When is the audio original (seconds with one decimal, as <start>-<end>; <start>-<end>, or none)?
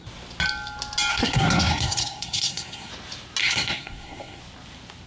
0.0-1.1; 2.9-3.4; 4.4-5.1